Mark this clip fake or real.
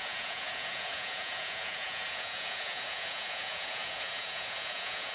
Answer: fake